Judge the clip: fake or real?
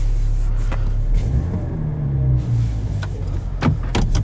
real